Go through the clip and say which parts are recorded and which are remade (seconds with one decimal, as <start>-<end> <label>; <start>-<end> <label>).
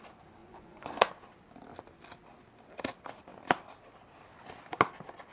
0.0-0.4 recorded; 0.4-1.1 remade; 1.1-5.3 recorded